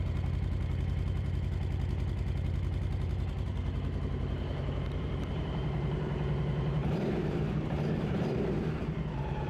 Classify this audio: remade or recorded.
remade